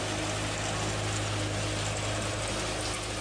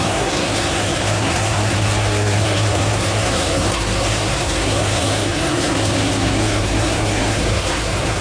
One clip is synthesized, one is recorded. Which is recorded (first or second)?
first